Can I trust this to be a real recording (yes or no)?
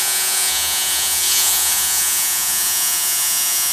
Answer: no